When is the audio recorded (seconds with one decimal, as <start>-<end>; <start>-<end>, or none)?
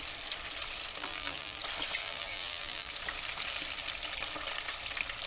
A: 0.0-1.0; 1.6-2.0; 2.9-5.3